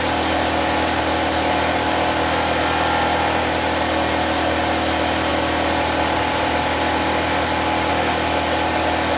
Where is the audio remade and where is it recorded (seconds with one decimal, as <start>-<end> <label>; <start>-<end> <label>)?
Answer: 0.0-9.2 recorded